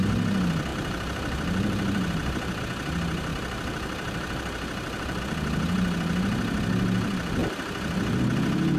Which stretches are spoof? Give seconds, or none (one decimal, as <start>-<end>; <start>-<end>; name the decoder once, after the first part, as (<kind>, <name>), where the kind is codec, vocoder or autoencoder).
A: 0.7-2.6 (vocoder, BigVGAN v2); 3.3-5.2; 7.4-8.2